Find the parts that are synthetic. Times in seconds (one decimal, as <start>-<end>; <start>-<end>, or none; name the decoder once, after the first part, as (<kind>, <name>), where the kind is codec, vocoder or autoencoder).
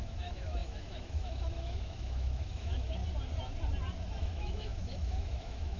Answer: 0.0-3.0 (autoencoder, DAC-VAE); 4.2-5.8